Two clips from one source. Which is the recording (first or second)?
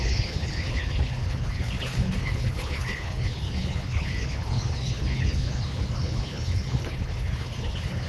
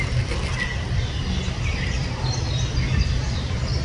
second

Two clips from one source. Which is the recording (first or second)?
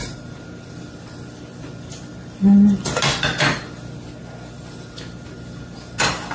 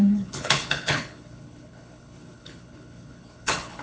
first